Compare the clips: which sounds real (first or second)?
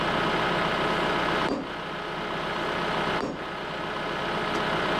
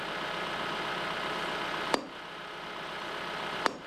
first